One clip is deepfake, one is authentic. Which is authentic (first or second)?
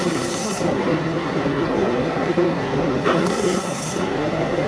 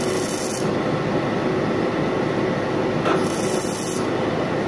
second